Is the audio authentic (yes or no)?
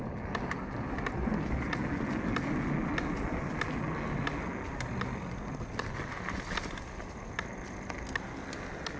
yes